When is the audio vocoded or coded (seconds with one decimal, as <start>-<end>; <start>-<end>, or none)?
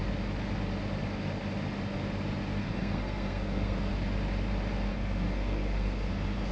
2.6-3.9; 4.9-6.5